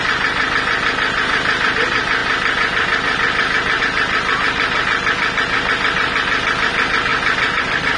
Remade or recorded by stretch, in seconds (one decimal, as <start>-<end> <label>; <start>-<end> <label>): 0.0-8.0 recorded